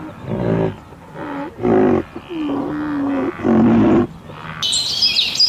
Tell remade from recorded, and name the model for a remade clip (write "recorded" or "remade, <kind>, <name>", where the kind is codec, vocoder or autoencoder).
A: recorded